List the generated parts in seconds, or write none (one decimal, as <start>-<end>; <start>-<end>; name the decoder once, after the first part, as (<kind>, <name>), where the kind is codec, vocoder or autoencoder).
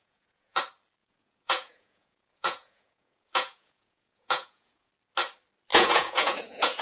0.0-0.6 (vocoder, Vocos); 1.0-4.9; 5.7-6.8